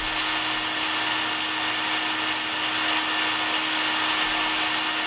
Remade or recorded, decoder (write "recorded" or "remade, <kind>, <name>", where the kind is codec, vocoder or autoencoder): recorded